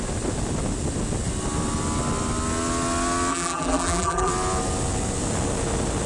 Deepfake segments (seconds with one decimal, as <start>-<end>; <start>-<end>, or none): 3.3-4.3